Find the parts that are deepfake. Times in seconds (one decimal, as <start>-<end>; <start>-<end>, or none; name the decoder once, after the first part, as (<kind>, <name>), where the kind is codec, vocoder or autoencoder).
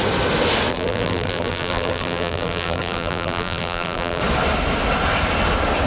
0.7-4.2 (vocoder, BigVGAN v2)